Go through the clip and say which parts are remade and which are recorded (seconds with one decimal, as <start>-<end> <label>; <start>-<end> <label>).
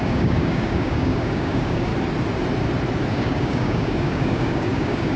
0.0-1.9 remade; 1.9-3.1 recorded; 3.1-5.2 remade